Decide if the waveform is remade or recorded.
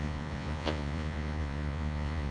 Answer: remade